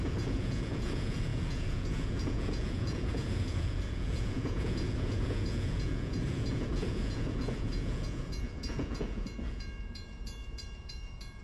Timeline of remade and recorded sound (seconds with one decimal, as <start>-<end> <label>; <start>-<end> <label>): 0.0-11.4 remade